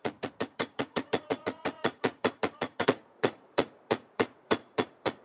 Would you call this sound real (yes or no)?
no